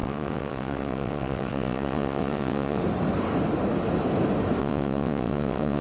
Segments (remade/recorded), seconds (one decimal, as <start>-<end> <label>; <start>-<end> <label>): 0.0-2.8 remade; 2.8-4.6 recorded; 4.6-5.8 remade